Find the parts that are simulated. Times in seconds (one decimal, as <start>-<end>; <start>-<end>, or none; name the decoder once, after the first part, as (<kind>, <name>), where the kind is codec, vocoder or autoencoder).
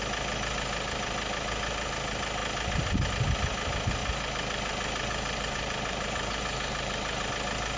4.0-7.3 (vocoder, BigVGAN v2)